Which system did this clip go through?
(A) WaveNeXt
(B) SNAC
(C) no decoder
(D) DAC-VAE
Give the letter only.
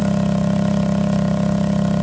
C